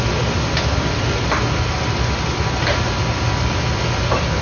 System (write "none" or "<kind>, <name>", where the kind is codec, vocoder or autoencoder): none